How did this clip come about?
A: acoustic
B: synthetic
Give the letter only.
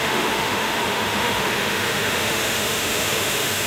B